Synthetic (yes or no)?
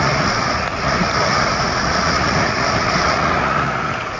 yes